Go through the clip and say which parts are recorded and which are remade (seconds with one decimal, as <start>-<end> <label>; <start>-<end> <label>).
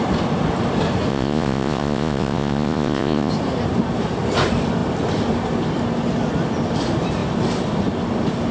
0.0-1.1 recorded; 1.1-3.3 remade; 3.3-8.5 recorded